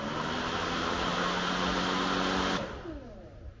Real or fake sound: real